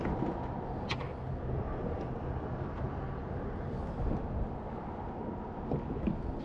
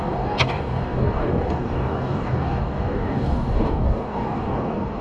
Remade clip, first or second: second